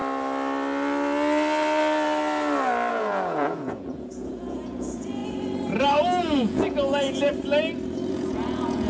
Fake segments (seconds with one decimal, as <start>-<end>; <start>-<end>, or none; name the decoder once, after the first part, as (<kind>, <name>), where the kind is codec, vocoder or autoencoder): 2.9-5.2 (vocoder, Vocos); 6.2-7.3; 8.1-8.9